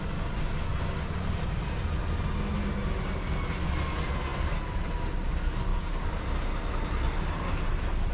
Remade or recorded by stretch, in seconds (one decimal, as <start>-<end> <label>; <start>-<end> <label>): 0.0-8.1 recorded